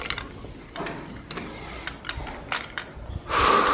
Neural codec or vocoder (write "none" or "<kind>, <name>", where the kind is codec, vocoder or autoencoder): none